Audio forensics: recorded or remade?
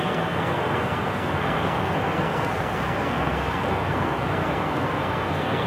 remade